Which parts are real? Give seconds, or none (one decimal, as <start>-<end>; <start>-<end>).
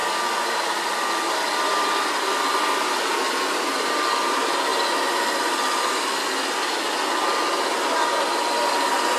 0.0-9.2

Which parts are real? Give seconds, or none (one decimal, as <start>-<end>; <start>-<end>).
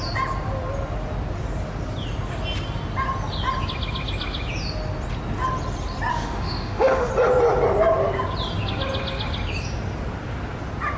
0.0-6.1; 7.1-11.0